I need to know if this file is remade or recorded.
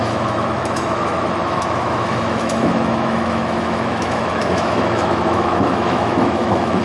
remade